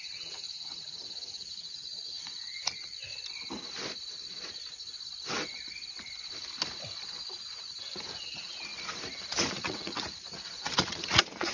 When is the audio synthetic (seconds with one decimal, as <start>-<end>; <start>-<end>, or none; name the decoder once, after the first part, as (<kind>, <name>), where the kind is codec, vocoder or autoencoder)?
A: 0.0-3.1 (vocoder, Vocos); 7.8-8.7; 9.5-11.5